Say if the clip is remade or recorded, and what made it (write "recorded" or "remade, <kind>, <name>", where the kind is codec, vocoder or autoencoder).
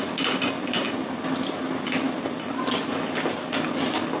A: recorded